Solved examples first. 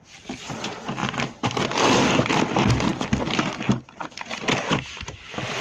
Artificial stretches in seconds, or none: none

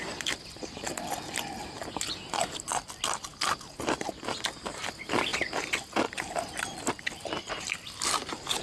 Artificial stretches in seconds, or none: none